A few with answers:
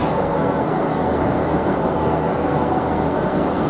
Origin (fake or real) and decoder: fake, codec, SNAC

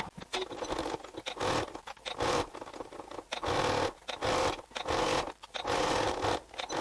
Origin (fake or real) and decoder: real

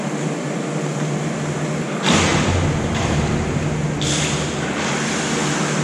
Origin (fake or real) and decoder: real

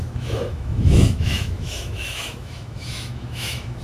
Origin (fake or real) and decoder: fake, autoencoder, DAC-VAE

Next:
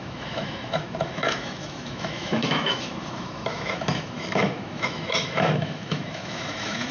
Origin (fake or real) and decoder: fake, autoencoder, DAC-VAE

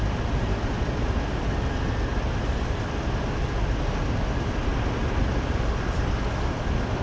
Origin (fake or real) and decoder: real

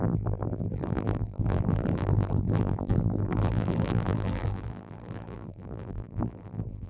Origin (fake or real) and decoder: fake, vocoder, BigVGAN v2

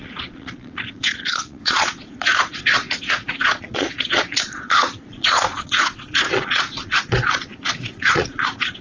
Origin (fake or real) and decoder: fake, vocoder, Vocos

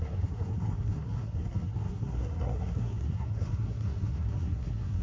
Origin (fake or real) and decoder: fake, codec, SNAC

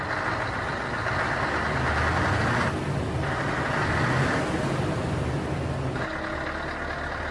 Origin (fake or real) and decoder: real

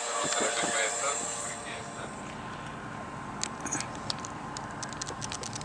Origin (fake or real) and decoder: real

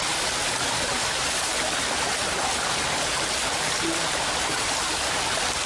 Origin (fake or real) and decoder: real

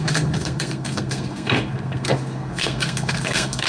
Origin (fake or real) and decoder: fake, codec, SNAC